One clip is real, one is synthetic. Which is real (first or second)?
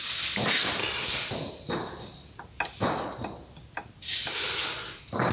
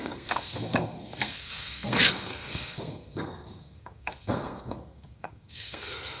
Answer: first